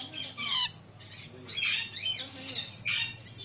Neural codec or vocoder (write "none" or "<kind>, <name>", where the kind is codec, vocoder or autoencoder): none